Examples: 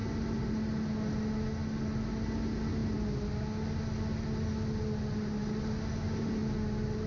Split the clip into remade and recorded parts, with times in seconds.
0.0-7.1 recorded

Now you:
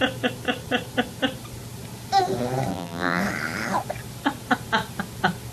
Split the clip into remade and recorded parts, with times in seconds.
0.0-2.7 recorded; 2.7-3.2 remade; 3.2-5.5 recorded

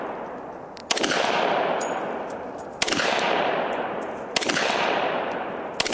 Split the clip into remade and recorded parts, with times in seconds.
0.0-0.8 recorded; 0.8-2.9 remade; 2.9-4.3 recorded; 4.3-5.1 remade; 5.1-5.9 recorded

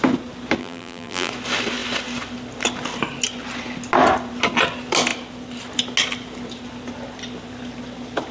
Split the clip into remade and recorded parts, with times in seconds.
0.0-0.6 recorded; 0.6-1.3 remade; 1.3-8.3 recorded

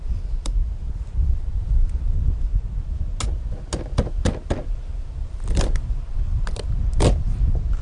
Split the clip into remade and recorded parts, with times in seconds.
0.0-3.1 remade; 3.1-4.9 recorded; 4.9-7.8 remade

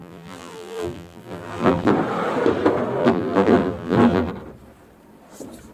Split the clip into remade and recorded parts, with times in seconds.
0.0-1.9 remade; 1.9-3.0 recorded; 3.0-4.3 remade; 4.3-5.7 recorded

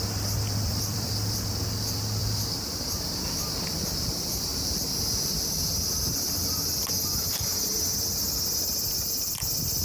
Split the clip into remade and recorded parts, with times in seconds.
0.0-0.7 recorded; 0.7-1.5 remade; 1.5-2.2 recorded; 2.2-2.8 remade; 2.8-9.8 recorded

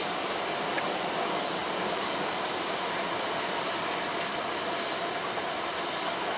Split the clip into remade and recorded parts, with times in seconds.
0.0-1.6 recorded; 1.6-5.1 remade; 5.1-6.4 recorded